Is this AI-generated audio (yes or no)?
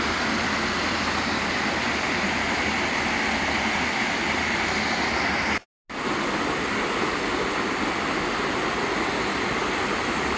no